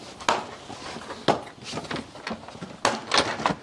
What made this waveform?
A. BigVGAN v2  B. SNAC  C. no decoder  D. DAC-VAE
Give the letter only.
C